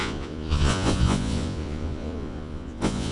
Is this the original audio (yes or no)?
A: no